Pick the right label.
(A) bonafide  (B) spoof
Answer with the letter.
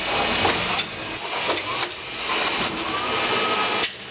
A